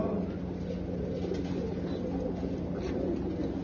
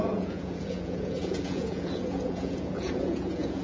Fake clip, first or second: second